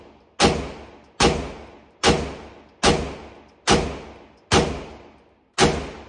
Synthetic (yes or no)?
no